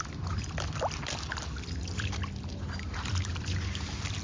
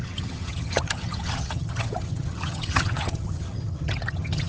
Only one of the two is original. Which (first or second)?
first